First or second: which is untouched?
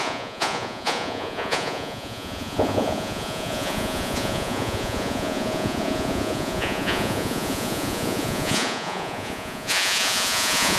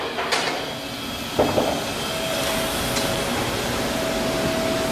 second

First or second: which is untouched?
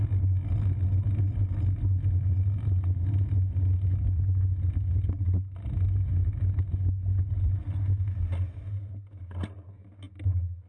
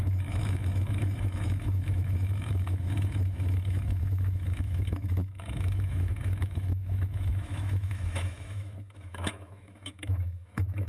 first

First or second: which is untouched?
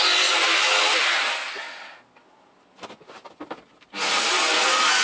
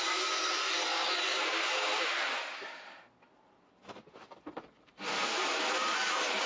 first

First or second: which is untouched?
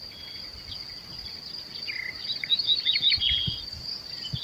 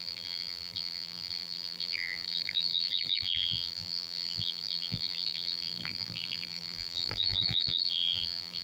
first